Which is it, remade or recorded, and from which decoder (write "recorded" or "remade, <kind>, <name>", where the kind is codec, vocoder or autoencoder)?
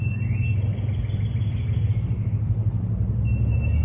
recorded